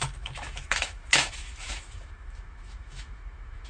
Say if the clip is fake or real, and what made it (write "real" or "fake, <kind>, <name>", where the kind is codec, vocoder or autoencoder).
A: fake, autoencoder, DAC-VAE